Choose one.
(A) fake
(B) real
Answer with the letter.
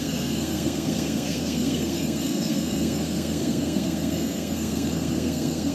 A